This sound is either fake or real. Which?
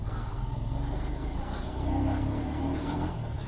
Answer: fake